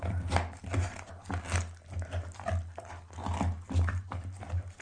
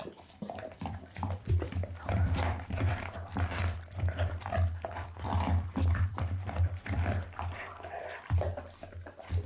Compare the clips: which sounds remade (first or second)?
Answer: second